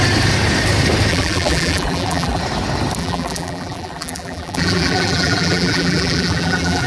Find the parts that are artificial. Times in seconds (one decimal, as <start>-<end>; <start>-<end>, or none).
1.1-2.4; 3.0-6.9